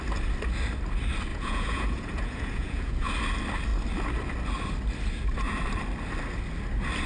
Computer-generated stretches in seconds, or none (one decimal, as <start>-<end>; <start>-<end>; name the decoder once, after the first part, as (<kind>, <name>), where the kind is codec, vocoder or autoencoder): 1.3-3.1 (vocoder, Vocos)